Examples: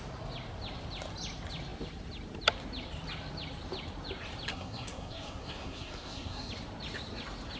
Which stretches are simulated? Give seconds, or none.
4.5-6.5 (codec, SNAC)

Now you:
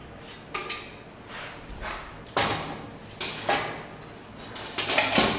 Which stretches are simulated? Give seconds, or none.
none

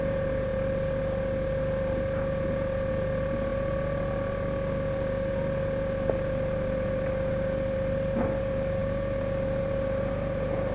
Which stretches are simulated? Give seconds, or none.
none

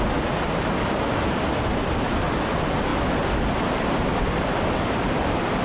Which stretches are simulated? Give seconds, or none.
none

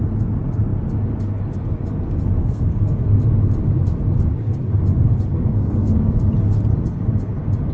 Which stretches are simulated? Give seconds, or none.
2.4-3.3 (codec, SNAC); 5.4-6.1

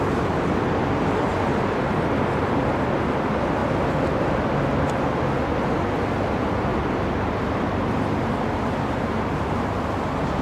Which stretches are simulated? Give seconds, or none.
none

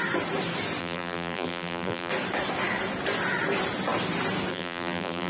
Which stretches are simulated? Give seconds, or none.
0.8-2.1 (vocoder, BigVGAN v2); 4.5-5.3